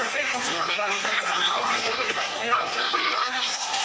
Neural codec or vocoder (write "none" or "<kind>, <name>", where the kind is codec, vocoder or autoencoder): codec, SNAC